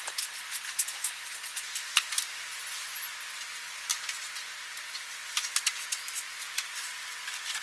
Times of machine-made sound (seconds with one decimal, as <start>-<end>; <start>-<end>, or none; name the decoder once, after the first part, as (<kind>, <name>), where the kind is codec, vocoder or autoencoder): 1.5-2.1 (vocoder, Vocos)